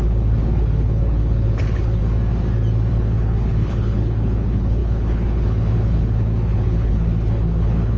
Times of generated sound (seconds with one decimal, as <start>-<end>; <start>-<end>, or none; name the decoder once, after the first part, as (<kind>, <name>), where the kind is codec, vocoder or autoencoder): 0.0-2.0 (codec, HILCodec); 2.9-8.0